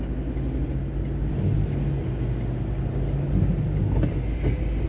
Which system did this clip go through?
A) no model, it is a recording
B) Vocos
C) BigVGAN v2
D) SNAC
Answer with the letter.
A